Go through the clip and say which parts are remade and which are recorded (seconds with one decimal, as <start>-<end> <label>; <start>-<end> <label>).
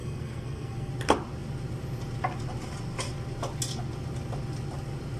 0.0-0.9 remade; 0.9-5.2 recorded